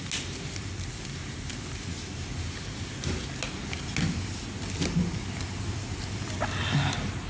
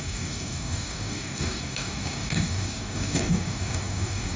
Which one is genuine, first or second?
first